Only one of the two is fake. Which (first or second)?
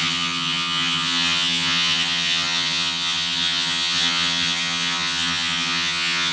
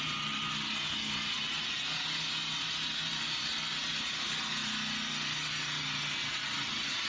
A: first